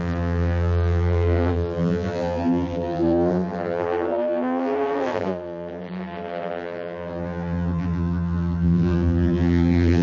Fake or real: fake